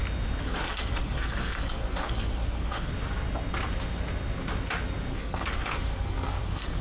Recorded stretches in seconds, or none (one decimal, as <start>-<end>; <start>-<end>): 0.0-0.4; 2.9-5.1